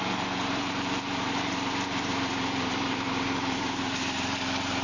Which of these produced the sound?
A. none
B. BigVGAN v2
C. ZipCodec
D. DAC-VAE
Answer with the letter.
B